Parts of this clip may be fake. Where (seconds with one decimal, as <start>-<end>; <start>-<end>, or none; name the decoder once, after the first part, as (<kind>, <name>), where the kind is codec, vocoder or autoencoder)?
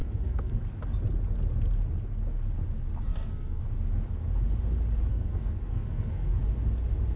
0.0-0.6 (codec, SNAC); 3.1-3.6; 5.1-6.4